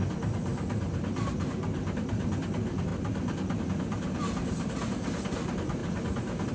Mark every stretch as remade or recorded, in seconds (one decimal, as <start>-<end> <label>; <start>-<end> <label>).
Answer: 0.0-6.5 recorded